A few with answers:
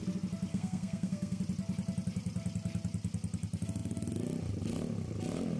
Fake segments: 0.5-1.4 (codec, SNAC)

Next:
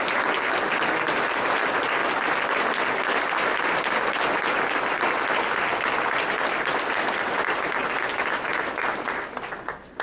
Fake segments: none

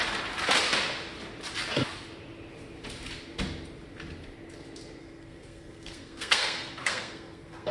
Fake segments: 5.0-7.7 (codec, SNAC)

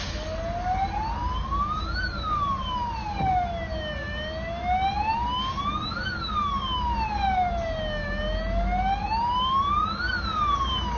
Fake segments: none

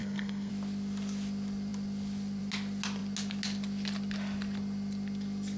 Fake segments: 0.0-0.5 (codec, SNAC)

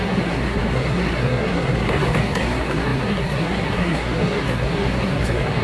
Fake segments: 0.0-5.6 (codec, SNAC)

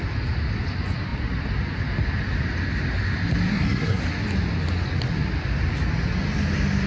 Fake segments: 3.5-4.0 (codec, SNAC)